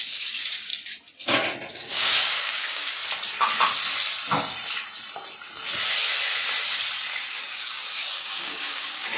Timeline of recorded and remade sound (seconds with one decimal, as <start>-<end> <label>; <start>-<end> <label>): 0.0-0.7 remade; 0.7-1.7 recorded; 1.7-3.0 remade; 3.0-7.3 recorded; 7.3-9.2 remade